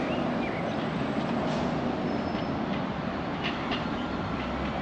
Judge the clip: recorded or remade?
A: recorded